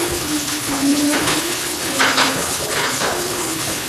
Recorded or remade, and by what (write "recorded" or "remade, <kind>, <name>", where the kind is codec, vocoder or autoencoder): remade, codec, HILCodec